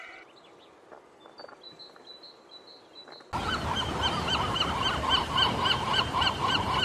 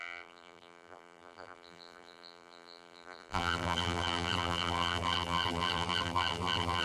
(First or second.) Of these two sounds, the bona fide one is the first